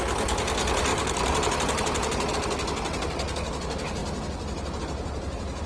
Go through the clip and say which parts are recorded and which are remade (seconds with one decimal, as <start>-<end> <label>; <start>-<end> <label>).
0.0-0.9 recorded; 0.9-2.3 remade; 2.3-5.7 recorded